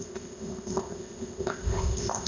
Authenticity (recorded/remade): remade